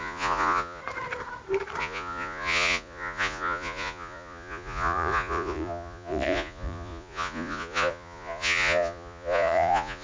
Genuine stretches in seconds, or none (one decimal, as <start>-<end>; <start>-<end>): 0.8-1.8